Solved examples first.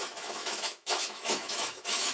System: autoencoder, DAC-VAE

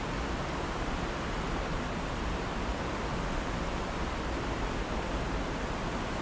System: none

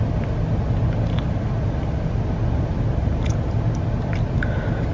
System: none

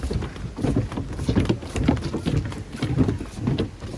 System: none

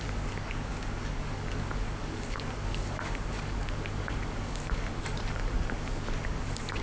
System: codec, DAC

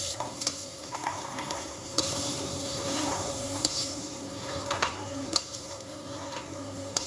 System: codec, SNAC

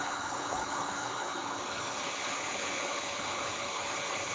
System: codec, HILCodec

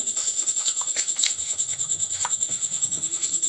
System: autoencoder, DAC-VAE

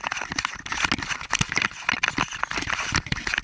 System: none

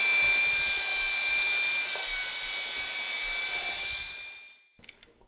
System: none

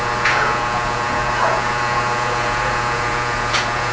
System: vocoder, Vocos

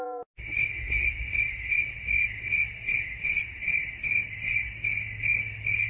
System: none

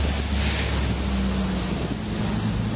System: none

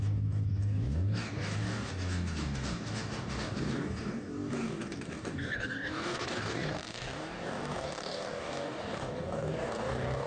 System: codec, DAC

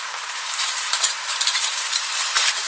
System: vocoder, BigVGAN v2